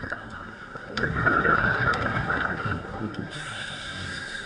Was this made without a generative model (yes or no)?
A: no